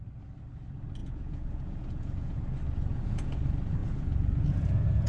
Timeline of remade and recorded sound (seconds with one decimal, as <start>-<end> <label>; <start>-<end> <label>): 0.0-1.0 recorded; 1.0-2.4 remade; 2.4-2.9 recorded; 2.9-3.4 remade; 3.4-3.8 recorded; 3.8-5.1 remade